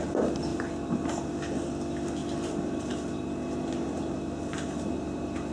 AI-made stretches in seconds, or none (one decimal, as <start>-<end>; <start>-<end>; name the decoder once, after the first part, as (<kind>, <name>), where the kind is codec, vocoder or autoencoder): 0.5-1.3 (vocoder, BigVGAN v2); 2.2-5.5